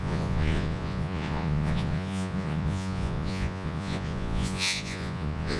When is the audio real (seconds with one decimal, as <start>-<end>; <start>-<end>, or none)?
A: none